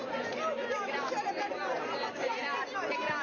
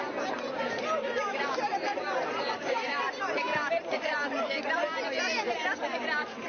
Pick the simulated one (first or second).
second